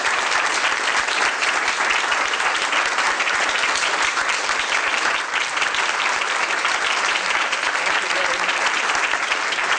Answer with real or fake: fake